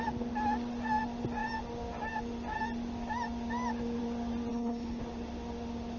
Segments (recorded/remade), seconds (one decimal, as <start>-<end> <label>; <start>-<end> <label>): 0.0-4.5 recorded; 4.5-5.0 remade; 5.0-6.0 recorded